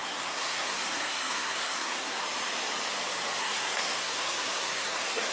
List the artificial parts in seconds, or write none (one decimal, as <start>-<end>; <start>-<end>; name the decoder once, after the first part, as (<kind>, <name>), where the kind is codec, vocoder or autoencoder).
0.0-2.2 (codec, SNAC); 3.4-5.3